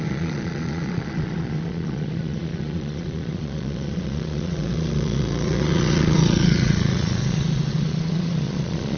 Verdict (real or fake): fake